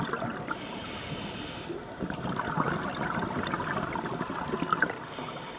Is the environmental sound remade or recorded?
recorded